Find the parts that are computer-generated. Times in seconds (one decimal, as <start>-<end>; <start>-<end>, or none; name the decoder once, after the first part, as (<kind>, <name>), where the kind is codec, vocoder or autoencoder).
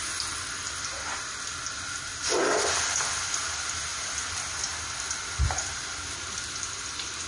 none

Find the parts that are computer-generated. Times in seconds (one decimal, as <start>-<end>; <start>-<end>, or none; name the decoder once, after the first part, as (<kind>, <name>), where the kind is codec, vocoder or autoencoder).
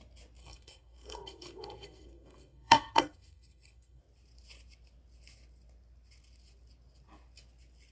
0.4-4.0 (codec, SNAC)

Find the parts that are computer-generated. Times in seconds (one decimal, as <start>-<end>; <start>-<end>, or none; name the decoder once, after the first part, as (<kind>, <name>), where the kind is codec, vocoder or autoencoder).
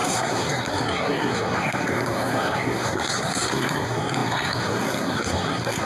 0.0-5.8 (codec, SNAC)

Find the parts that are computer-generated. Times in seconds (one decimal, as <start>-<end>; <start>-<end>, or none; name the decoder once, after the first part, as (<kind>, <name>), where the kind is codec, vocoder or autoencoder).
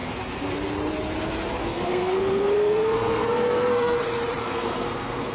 1.6-4.0 (codec, SNAC); 4.4-5.3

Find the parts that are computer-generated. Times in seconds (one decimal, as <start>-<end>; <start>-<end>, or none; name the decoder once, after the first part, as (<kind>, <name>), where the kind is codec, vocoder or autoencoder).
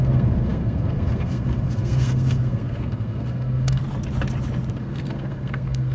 0.0-3.8 (codec, SNAC); 4.8-5.9